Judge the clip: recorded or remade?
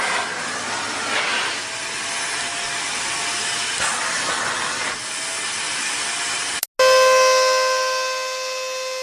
recorded